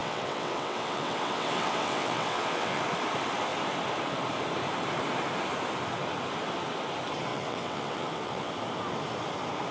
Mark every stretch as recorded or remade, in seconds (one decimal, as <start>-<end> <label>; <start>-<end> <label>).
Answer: 0.0-2.8 remade; 2.8-7.3 recorded; 7.3-8.5 remade; 8.5-9.7 recorded